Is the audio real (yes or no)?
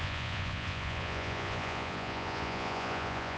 no